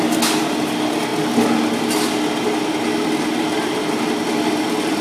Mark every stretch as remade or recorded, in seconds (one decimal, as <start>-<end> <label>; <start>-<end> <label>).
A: 0.0-5.0 recorded